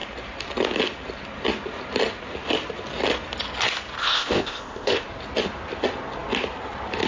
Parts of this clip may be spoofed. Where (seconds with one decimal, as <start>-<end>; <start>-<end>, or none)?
4.0-5.0